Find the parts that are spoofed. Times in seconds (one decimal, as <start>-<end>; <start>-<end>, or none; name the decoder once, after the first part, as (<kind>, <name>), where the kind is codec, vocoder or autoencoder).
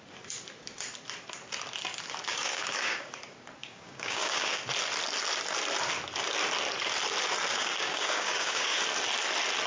2.3-3.1 (codec, DAC); 3.6-4.6; 7.5-8.8